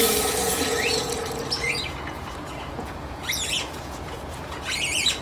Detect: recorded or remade remade